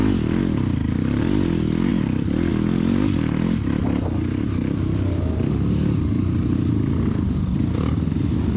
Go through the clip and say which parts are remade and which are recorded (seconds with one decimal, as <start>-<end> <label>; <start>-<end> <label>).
0.0-8.6 recorded